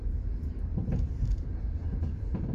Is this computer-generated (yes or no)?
yes